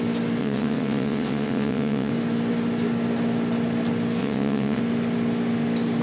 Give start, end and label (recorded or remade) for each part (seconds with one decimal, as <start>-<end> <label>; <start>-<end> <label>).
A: 0.0-0.4 recorded; 0.4-2.1 remade; 2.1-4.2 recorded; 4.2-4.8 remade; 4.8-6.0 recorded